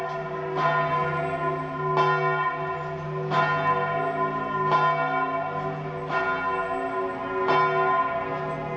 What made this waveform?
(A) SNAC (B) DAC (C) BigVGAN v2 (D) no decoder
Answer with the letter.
D